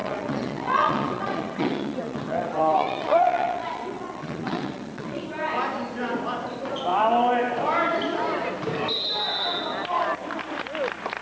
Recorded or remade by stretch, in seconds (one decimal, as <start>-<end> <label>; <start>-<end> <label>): 0.0-5.2 remade; 5.2-11.2 recorded